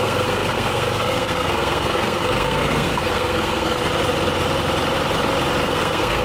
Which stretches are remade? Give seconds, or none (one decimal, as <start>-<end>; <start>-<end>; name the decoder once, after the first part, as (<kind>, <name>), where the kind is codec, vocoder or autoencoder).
0.0-3.8 (codec, SNAC); 5.6-6.2